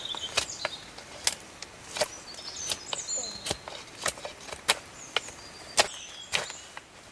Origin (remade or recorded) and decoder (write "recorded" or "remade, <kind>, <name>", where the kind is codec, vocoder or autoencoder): recorded